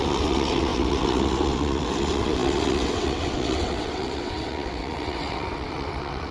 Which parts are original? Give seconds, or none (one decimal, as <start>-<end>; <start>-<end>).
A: none